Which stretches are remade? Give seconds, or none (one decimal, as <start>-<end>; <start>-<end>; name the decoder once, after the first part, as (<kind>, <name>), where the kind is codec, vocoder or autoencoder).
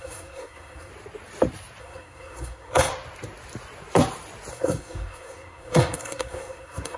0.0-0.9 (codec, SNAC); 1.8-2.9; 4.5-7.0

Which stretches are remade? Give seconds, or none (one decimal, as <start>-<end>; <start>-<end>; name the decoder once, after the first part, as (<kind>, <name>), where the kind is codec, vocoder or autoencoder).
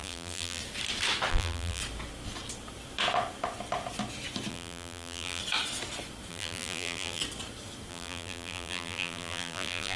0.0-0.6 (vocoder, BigVGAN v2); 1.3-1.8; 4.5-5.4; 6.3-7.2; 7.9-10.0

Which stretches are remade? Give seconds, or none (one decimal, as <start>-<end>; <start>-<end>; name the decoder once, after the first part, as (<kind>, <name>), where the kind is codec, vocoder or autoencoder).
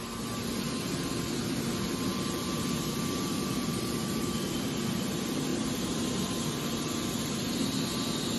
2.1-4.3 (vocoder, BigVGAN v2); 5.5-6.9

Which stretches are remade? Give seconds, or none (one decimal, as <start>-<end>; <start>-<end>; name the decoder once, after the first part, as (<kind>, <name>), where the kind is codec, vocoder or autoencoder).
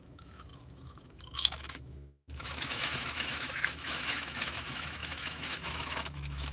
0.0-6.5 (autoencoder, DAC-VAE)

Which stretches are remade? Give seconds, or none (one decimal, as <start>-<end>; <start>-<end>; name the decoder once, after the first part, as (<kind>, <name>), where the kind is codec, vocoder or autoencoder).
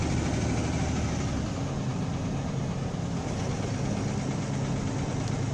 none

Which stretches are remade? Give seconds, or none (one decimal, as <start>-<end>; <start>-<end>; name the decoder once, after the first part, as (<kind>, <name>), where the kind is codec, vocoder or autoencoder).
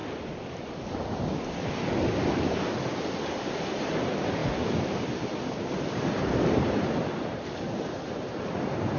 3.8-9.0 (vocoder, BigVGAN v2)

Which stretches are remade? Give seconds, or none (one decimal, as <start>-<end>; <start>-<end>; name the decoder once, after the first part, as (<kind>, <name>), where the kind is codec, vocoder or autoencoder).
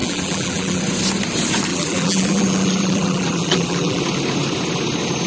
0.0-0.8 (vocoder, BigVGAN v2); 1.7-4.0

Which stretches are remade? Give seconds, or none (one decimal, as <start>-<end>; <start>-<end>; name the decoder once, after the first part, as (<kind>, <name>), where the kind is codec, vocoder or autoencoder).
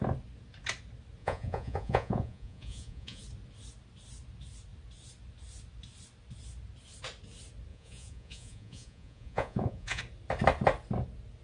1.2-3.2 (vocoder, Vocos); 7.7-10.0